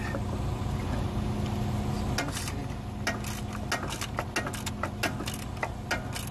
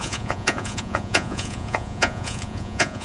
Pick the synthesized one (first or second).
second